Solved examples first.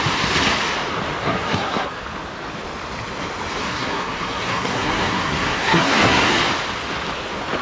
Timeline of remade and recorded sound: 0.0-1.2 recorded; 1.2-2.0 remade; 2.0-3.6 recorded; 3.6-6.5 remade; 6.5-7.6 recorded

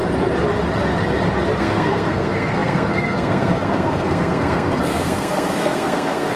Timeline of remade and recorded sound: 0.0-1.6 recorded; 1.6-6.4 remade

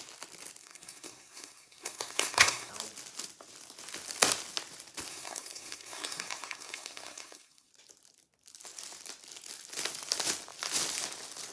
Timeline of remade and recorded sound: 0.0-0.6 recorded; 0.6-2.7 remade; 2.7-5.1 recorded; 5.1-7.7 remade; 7.7-11.5 recorded

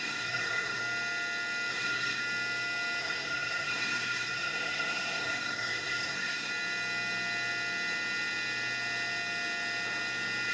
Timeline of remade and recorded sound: 0.0-0.8 remade; 0.8-1.7 recorded; 1.7-2.2 remade; 2.2-3.0 recorded; 3.0-6.5 remade; 6.5-10.5 recorded